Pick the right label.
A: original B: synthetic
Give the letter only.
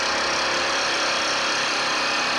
A